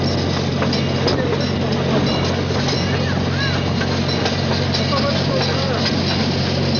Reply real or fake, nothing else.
real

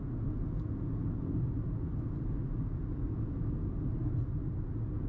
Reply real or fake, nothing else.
real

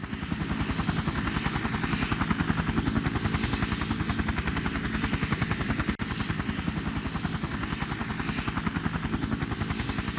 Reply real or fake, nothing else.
real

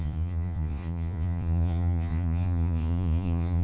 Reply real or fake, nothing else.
fake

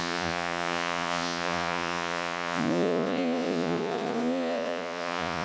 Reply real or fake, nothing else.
fake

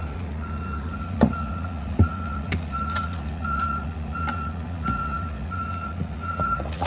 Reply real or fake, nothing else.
fake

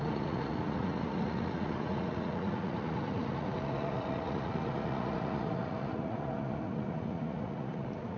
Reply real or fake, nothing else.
fake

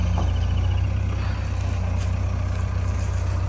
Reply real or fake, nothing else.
real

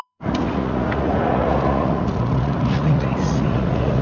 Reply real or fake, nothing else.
fake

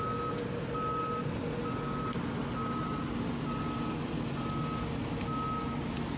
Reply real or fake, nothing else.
real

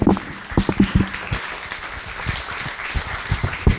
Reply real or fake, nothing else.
real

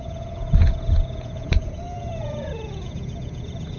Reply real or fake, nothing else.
fake